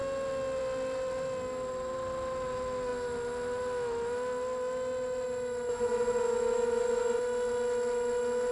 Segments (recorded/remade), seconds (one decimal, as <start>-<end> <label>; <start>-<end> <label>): 0.0-8.5 recorded